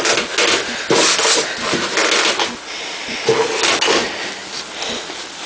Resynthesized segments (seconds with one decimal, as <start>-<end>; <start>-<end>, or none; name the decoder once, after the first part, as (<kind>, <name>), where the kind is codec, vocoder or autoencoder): none